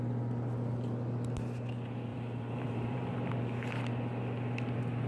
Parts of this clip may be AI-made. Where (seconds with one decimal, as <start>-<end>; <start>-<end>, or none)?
2.1-3.3